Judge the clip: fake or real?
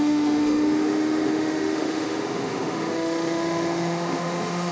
fake